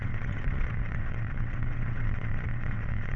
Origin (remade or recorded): remade